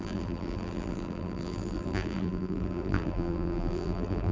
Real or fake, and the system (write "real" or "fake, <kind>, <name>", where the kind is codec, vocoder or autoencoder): fake, vocoder, BigVGAN v2